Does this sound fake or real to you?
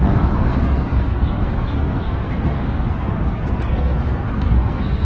fake